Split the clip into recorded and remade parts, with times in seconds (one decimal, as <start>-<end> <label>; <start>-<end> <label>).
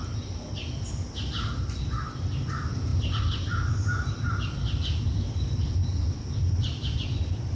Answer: 0.0-0.9 recorded; 0.9-7.5 remade